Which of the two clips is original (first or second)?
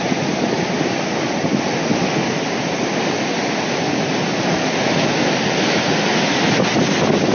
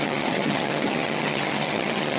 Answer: first